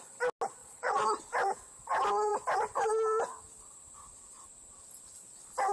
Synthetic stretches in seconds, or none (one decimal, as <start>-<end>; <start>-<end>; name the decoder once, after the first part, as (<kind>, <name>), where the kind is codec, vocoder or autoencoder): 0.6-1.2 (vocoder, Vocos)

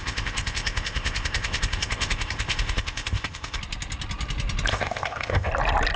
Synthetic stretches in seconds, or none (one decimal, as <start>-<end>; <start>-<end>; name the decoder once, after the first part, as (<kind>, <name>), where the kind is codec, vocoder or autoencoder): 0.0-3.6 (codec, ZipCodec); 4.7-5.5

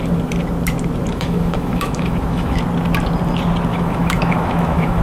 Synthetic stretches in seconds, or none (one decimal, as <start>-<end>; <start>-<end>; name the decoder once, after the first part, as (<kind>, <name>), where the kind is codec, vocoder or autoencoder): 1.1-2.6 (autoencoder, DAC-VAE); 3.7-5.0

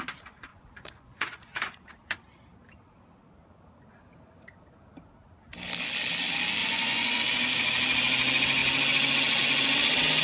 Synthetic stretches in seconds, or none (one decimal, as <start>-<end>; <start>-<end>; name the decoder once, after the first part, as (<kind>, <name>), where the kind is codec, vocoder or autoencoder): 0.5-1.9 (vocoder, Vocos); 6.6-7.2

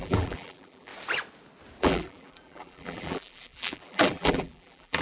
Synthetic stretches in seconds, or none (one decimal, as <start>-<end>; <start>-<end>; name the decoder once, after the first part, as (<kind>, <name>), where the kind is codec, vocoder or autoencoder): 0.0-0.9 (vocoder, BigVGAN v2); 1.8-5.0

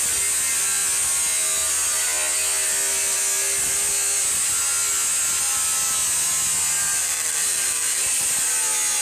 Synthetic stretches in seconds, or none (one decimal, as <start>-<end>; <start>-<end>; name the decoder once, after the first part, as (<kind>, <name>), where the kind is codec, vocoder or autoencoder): 7.0-8.0 (vocoder, BigVGAN v2)